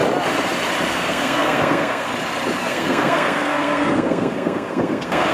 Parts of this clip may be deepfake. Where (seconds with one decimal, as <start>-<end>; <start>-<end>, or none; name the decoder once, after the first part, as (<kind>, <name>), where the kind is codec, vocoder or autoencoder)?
0.9-2.1 (codec, SNAC); 2.6-5.3

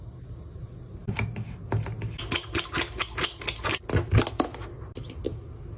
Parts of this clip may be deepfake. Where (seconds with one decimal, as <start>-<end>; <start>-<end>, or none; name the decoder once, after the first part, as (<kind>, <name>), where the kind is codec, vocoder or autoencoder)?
none

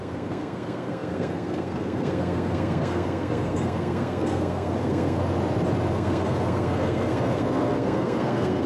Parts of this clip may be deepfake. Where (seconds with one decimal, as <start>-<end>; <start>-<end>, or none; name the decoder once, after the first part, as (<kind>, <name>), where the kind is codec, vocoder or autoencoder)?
0.0-5.2 (codec, SNAC); 5.9-8.7

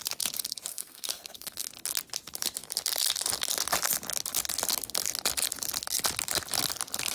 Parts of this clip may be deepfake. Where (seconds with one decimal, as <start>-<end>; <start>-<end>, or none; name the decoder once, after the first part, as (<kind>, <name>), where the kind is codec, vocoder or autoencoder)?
0.7-1.7 (codec, SNAC)

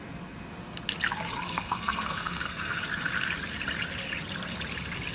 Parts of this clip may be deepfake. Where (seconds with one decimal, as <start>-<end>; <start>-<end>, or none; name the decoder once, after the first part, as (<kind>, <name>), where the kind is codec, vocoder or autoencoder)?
1.5-2.8 (codec, SNAC)